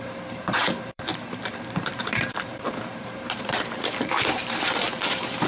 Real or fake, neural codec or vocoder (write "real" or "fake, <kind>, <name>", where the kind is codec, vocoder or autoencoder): fake, vocoder, BigVGAN v2